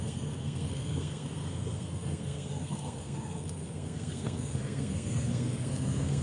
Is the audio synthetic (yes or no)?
yes